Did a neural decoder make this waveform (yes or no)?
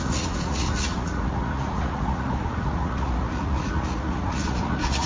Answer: yes